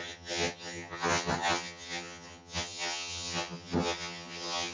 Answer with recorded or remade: remade